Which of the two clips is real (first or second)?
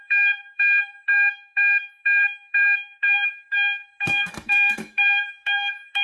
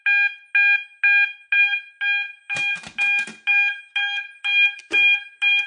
second